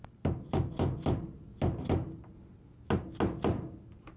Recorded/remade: recorded